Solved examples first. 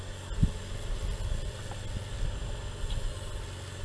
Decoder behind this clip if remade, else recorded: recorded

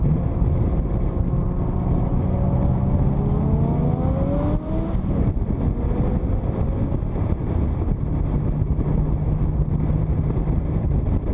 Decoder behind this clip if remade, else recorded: recorded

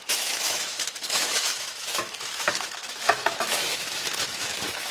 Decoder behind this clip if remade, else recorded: remade, autoencoder, DAC-VAE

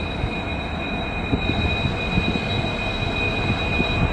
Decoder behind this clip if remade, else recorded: recorded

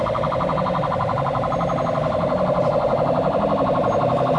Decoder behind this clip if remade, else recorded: recorded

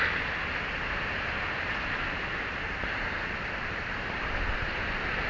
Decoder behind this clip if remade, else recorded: recorded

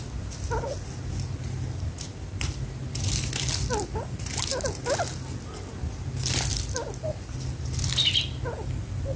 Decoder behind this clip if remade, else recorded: recorded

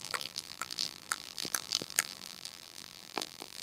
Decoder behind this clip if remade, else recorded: remade, vocoder, BigVGAN v2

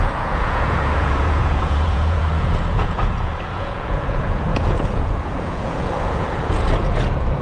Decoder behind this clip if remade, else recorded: remade, vocoder, Vocos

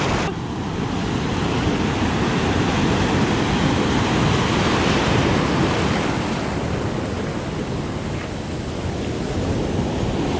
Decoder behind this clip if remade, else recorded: recorded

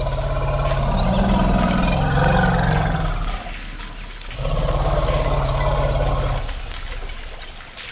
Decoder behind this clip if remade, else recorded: recorded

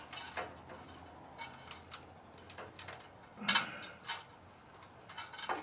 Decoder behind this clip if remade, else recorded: recorded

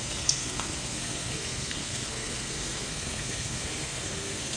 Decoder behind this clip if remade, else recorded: remade, codec, SNAC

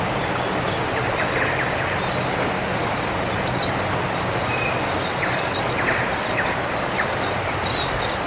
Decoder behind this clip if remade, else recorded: recorded